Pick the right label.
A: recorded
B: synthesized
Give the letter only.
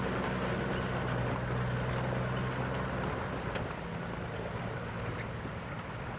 A